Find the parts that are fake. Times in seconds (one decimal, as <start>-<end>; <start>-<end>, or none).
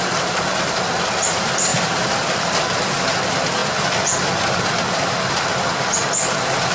0.0-3.6; 6.3-6.7